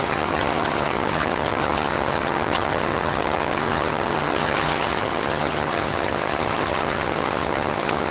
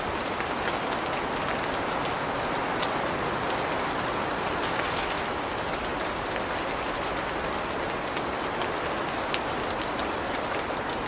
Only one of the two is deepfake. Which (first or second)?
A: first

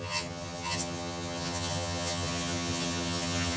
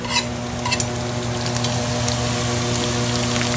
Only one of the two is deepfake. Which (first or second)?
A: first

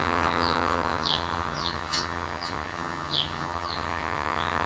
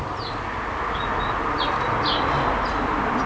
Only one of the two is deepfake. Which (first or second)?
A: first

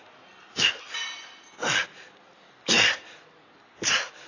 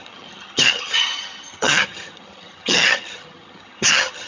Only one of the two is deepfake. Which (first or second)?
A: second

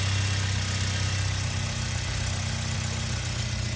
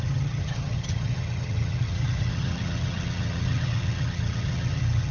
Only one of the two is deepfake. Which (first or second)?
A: second